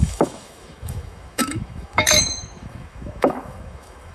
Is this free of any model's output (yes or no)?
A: no